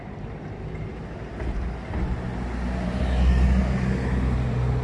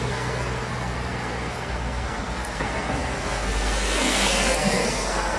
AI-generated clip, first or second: second